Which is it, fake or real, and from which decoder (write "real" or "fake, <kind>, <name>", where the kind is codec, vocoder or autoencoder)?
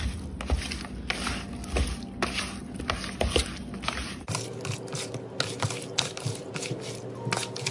real